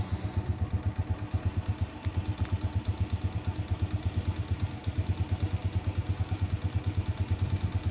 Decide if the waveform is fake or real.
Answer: real